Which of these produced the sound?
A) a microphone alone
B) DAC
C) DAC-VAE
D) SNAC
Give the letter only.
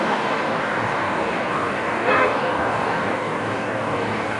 B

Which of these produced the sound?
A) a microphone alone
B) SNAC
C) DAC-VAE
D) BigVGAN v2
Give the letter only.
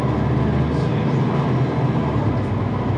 A